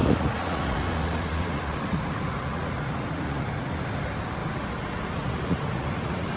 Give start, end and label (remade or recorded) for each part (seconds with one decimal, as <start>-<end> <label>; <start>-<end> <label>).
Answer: 0.0-3.8 remade; 3.8-4.4 recorded; 4.4-6.4 remade